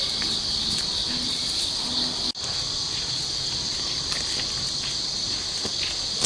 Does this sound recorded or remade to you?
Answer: recorded